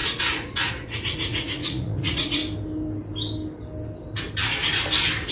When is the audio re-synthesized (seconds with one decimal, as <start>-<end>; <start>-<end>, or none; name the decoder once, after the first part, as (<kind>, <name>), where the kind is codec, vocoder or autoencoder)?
0.0-2.4 (vocoder, Vocos)